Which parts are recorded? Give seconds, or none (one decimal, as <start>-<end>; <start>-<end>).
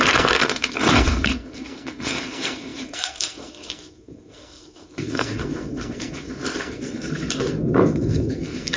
none